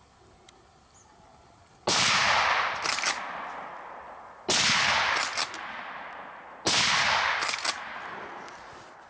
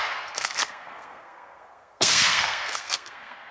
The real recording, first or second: first